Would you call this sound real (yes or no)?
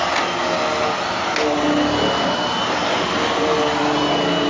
yes